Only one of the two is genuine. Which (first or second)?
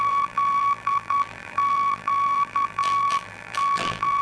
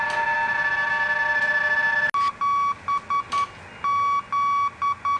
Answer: second